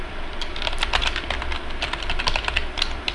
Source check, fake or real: real